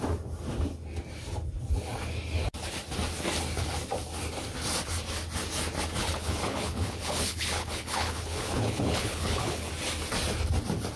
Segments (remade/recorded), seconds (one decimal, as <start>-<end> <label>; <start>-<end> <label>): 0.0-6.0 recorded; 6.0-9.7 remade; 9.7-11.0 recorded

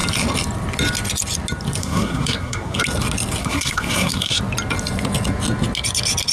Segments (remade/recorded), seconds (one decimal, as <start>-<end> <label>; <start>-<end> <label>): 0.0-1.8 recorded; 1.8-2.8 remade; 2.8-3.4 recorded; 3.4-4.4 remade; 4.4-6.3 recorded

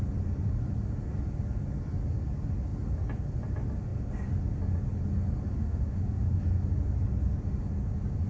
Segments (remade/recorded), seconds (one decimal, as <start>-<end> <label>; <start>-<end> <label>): 0.0-5.5 recorded; 5.5-6.4 remade; 6.4-8.3 recorded